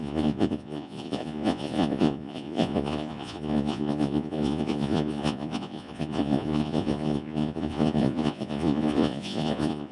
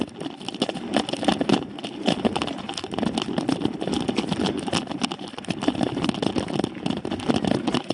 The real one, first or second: second